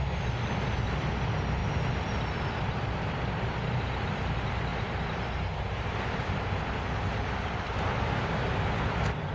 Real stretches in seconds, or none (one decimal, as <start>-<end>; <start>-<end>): 0.0-9.3